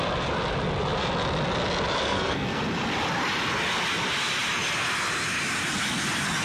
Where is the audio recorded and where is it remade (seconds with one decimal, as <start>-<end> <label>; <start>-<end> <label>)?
0.0-2.0 recorded; 2.0-2.6 remade; 2.6-6.4 recorded